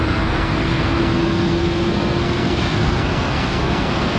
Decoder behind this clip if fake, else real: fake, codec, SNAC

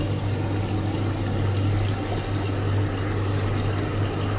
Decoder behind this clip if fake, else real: real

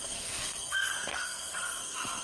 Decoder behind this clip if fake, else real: fake, codec, SNAC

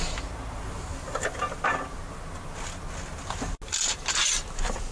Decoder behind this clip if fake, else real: real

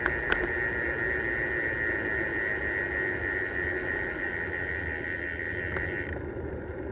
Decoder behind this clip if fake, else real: real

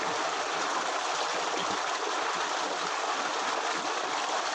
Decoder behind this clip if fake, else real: real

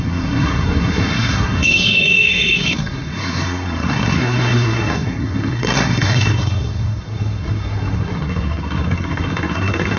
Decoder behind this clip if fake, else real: fake, codec, SNAC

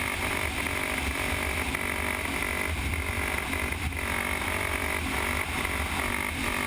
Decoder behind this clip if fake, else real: real